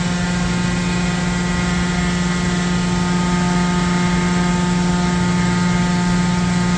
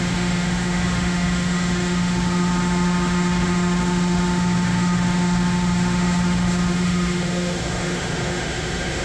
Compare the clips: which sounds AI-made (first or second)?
second